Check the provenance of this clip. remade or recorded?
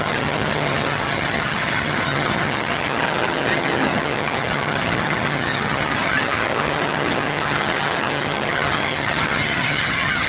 remade